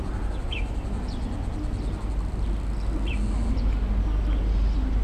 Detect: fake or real real